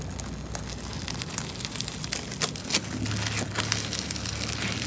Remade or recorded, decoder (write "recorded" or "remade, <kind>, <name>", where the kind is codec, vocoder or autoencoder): recorded